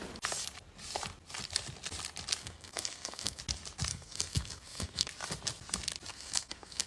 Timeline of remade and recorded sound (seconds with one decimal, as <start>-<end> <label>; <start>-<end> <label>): 0.0-2.4 recorded; 2.4-3.4 remade; 3.4-3.9 recorded; 3.9-5.1 remade; 5.1-6.1 recorded; 6.1-6.9 remade